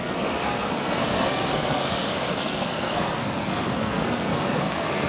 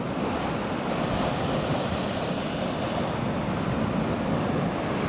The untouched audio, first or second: second